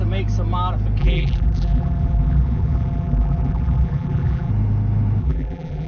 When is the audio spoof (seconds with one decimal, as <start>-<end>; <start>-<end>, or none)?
1.0-4.5; 5.2-5.9